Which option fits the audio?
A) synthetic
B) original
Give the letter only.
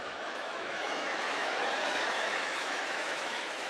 A